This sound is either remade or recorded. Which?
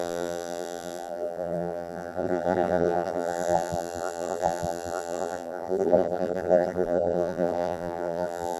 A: remade